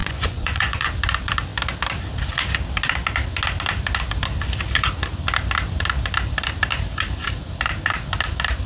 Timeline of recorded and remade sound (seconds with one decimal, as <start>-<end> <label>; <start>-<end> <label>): 0.0-0.9 remade; 0.9-8.7 recorded